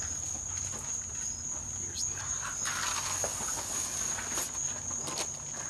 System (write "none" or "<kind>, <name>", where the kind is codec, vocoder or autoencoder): none